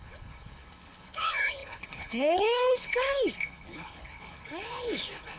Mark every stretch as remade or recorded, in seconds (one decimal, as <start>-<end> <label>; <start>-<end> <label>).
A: 0.0-5.4 remade